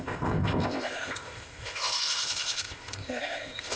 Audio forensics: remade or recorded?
remade